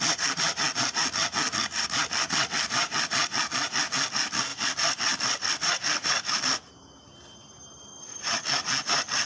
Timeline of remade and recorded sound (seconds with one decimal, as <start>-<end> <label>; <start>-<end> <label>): 0.0-4.5 recorded; 4.5-6.4 remade; 6.4-9.3 recorded